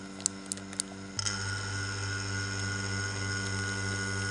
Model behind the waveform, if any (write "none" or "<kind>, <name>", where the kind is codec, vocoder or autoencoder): none